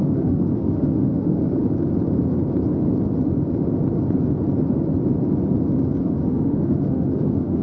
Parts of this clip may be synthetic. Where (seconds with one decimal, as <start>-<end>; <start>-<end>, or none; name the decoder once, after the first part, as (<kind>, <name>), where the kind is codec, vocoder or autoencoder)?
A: 0.0-1.6 (autoencoder, DAC-VAE); 6.0-7.6